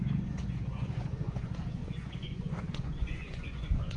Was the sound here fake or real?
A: fake